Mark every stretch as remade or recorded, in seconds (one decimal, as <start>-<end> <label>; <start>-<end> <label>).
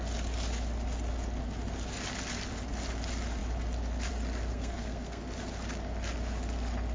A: 0.0-4.5 recorded; 4.5-5.3 remade; 5.3-6.9 recorded